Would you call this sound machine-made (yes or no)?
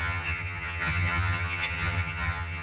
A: yes